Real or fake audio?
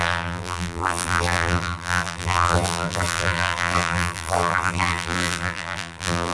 fake